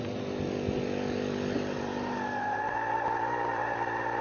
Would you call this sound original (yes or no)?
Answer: no